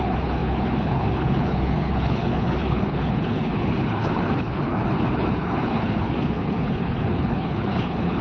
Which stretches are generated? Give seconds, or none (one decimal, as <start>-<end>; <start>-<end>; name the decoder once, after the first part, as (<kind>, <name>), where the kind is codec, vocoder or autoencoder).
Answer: 0.0-8.2 (codec, HILCodec)

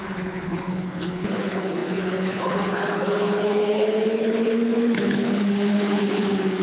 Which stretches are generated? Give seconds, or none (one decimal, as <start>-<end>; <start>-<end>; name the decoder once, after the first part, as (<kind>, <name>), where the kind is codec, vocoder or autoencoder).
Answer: 0.0-6.6 (codec, HILCodec)

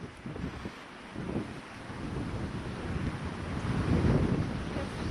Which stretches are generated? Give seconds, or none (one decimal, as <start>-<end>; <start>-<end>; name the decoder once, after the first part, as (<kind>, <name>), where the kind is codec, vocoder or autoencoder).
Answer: none

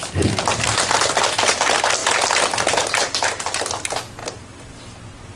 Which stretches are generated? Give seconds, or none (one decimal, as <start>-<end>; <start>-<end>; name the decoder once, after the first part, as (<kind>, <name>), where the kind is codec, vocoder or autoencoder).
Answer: none

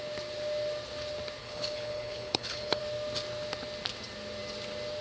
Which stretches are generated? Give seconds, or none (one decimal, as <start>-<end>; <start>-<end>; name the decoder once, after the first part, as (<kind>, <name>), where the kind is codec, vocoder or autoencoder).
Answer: 1.4-2.8 (codec, HILCodec)